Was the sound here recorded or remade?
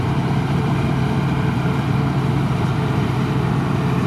remade